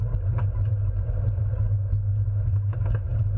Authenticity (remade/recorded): recorded